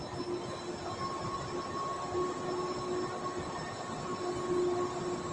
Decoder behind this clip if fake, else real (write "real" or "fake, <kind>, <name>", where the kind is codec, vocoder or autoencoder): real